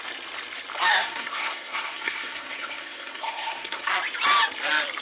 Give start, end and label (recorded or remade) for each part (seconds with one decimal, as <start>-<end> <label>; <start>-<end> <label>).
0.0-0.9 recorded; 0.9-3.9 remade; 3.9-5.0 recorded